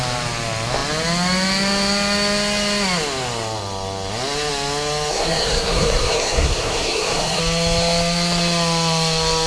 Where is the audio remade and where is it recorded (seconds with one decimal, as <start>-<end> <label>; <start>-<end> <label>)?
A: 0.0-5.1 recorded; 5.1-7.4 remade; 7.4-9.5 recorded